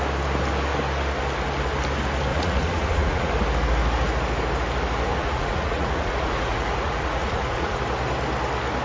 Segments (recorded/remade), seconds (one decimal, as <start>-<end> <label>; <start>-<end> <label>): 0.0-2.3 recorded; 2.3-3.3 remade; 3.3-5.1 recorded; 5.1-7.8 remade; 7.8-8.8 recorded